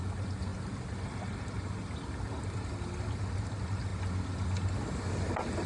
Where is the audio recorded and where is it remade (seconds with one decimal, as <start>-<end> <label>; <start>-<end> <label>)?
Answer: 0.0-5.7 recorded